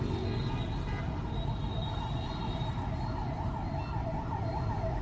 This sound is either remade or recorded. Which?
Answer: recorded